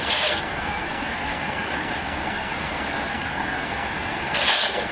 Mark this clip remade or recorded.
remade